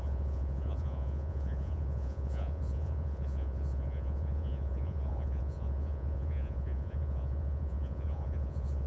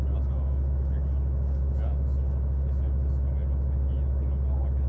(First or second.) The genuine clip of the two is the second